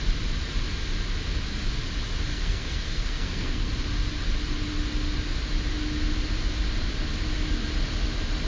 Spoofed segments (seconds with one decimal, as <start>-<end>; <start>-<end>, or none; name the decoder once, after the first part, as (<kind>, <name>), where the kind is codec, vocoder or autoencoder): 2.3-3.7 (codec, SNAC)